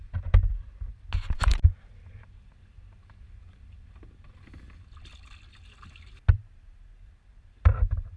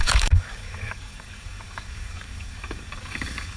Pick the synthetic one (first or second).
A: second